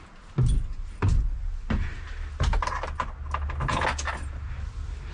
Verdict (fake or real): real